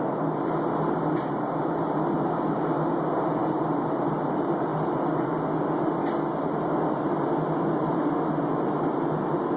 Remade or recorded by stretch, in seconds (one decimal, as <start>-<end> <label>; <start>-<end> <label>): 0.0-9.6 recorded